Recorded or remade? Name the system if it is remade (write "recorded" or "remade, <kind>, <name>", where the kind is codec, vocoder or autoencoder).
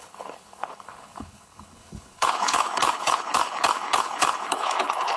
remade, codec, HILCodec